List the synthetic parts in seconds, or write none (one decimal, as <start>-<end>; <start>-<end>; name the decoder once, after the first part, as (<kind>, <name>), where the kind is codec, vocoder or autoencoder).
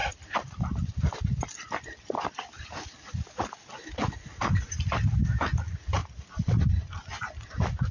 0.0-3.1 (vocoder, BigVGAN v2)